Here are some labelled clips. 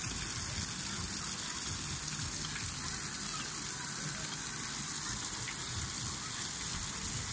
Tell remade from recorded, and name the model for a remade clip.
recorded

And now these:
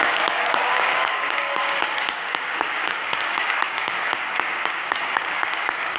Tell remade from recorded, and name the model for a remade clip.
remade, codec, DAC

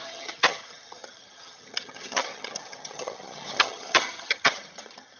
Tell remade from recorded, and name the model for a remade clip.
remade, vocoder, HiFi-GAN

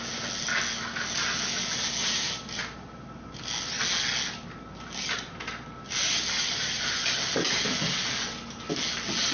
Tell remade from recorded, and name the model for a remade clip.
recorded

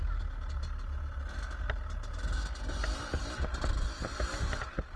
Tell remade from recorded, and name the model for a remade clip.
recorded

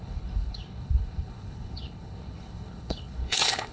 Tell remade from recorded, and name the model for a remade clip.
remade, codec, HILCodec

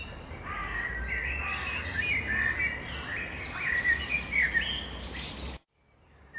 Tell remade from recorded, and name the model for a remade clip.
recorded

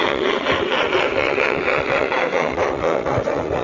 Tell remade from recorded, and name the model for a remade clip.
remade, vocoder, WaveNeXt